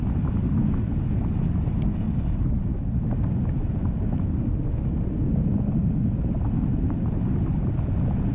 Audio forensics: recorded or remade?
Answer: recorded